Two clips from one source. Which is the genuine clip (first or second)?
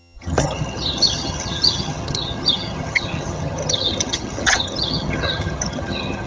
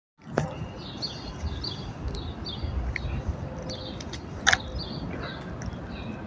second